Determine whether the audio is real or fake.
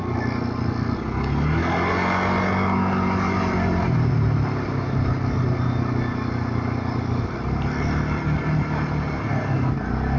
real